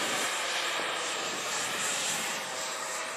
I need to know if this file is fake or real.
fake